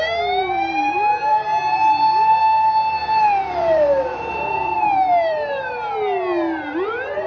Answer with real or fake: fake